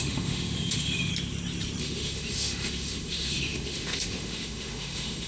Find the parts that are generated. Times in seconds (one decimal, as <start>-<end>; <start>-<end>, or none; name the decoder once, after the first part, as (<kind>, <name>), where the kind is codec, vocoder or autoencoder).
0.0-1.1 (autoencoder, DAC-VAE); 1.8-5.3